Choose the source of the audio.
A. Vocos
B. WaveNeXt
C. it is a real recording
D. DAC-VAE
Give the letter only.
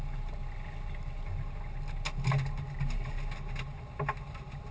C